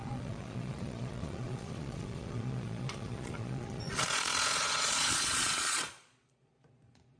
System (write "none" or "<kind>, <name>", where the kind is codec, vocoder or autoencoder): vocoder, Vocos